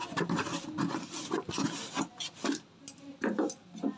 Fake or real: real